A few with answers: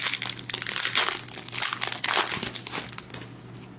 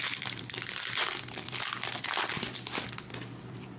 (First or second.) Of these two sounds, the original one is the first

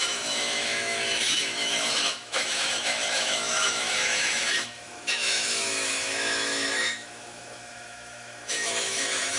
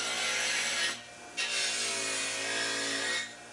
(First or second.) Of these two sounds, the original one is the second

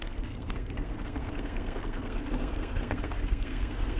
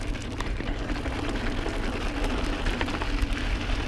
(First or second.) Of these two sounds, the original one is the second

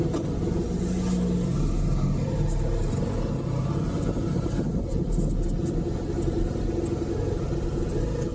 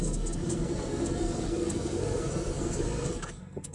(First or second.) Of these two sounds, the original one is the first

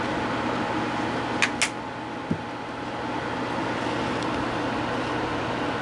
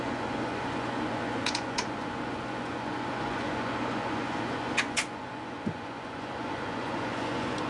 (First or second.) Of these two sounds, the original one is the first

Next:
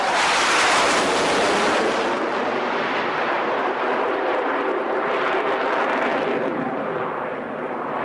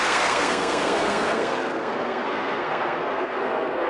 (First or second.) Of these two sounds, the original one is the first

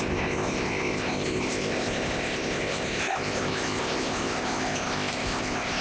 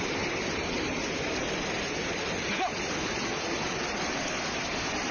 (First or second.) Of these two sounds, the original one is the second